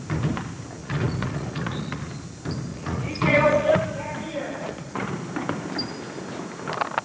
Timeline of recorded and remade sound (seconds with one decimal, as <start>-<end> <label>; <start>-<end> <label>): 0.0-0.8 recorded; 0.8-2.0 remade; 2.0-2.7 recorded; 2.7-3.7 remade; 3.7-4.3 recorded; 4.3-5.0 remade; 5.0-7.0 recorded